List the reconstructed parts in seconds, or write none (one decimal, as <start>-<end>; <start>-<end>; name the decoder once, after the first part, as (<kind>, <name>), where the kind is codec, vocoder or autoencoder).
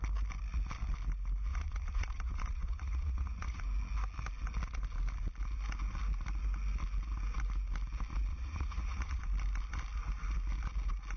1.5-3.6 (vocoder, Vocos); 8.3-9.2